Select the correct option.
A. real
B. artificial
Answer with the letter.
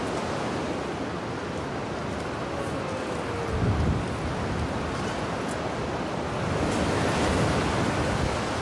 A